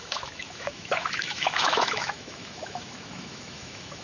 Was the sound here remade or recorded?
remade